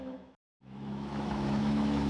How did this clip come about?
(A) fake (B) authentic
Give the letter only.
A